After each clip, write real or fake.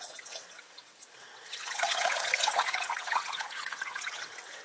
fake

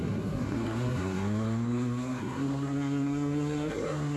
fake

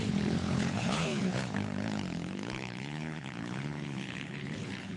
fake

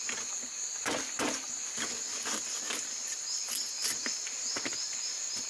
real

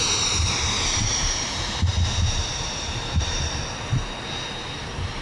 fake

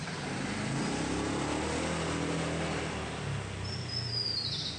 real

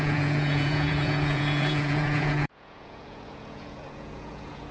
fake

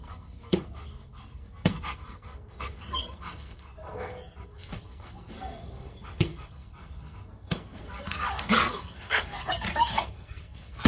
fake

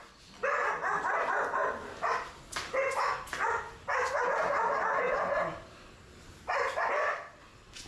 real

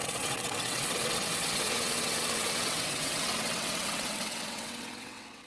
fake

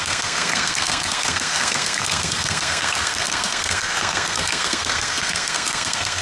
fake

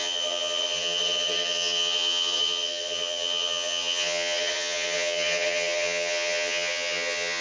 fake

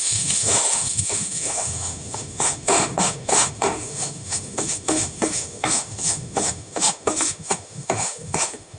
fake